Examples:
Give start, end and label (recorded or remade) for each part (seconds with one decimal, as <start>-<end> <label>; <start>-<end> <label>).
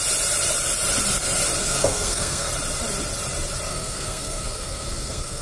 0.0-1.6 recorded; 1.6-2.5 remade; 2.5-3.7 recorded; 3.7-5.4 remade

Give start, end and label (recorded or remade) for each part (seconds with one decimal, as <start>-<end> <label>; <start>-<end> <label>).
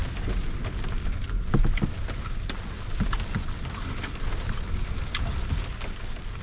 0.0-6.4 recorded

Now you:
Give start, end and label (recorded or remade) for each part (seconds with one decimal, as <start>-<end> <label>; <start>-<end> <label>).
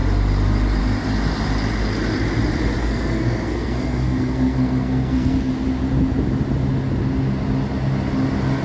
0.0-2.8 recorded; 2.8-5.5 remade; 5.5-8.6 recorded